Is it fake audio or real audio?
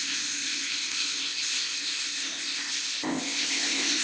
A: fake